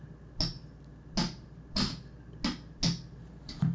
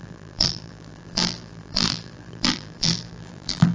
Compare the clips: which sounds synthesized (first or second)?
second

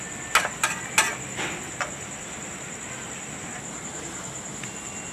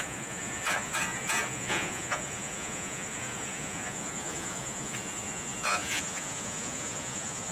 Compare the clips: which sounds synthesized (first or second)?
second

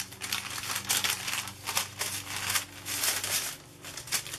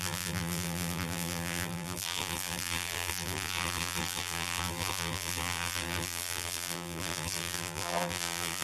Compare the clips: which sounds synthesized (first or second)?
second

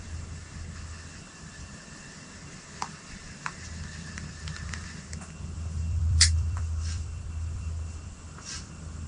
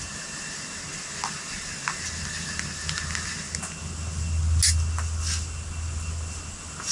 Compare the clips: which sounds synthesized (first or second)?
first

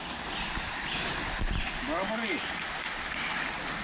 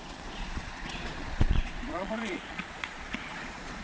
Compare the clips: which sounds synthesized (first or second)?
second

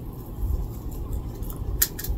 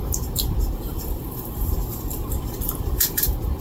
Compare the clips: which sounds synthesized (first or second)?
second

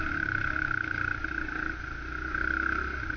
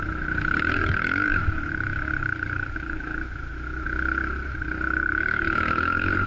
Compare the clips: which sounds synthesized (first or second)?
second